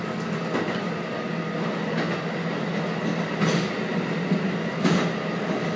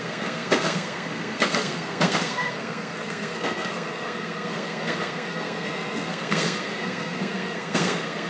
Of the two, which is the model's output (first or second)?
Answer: second